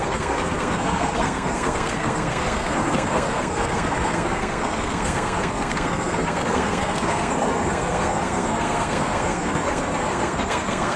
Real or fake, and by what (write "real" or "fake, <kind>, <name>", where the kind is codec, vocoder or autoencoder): fake, codec, SNAC